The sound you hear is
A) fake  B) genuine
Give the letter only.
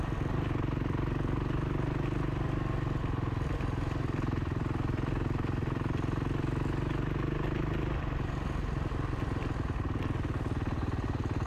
B